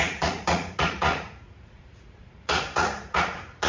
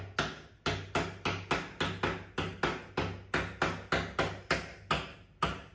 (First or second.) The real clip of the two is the second